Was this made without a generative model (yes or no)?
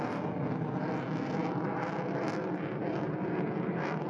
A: yes